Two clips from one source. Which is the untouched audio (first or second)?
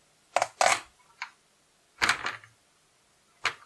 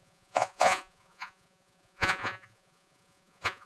first